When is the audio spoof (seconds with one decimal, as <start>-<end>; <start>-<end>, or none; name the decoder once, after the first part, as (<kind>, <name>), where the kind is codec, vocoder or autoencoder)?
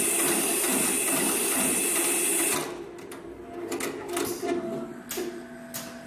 none